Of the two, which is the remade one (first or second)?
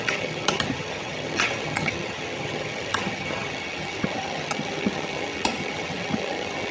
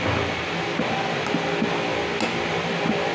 first